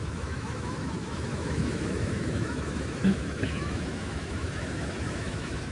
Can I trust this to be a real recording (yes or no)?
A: no